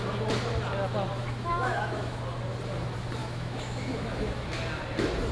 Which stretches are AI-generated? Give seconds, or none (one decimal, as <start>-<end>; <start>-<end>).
1.2-2.2; 3.2-4.3